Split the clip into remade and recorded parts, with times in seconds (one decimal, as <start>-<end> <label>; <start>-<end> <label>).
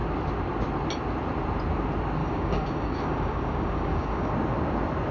0.0-2.2 recorded; 2.2-4.3 remade; 4.3-5.1 recorded